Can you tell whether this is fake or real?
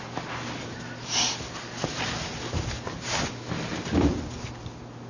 real